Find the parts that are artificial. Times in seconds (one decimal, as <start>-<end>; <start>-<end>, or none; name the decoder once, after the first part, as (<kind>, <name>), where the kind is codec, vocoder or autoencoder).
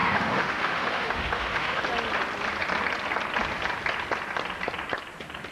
0.0-1.8 (autoencoder, DAC-VAE)